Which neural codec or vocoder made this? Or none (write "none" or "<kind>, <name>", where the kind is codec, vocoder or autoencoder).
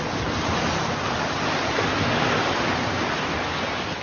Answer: none